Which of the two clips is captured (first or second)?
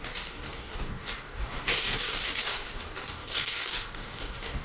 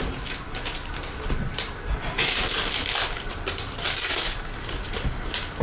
second